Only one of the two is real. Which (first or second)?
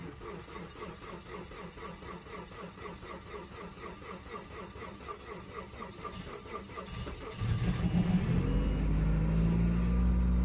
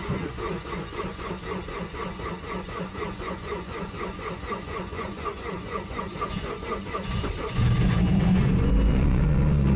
first